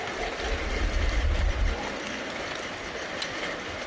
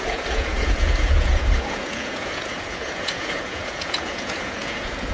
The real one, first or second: first